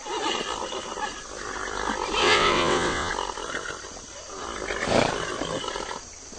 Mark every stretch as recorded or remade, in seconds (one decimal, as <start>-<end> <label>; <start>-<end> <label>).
0.0-2.2 recorded; 2.2-3.1 remade; 3.1-6.4 recorded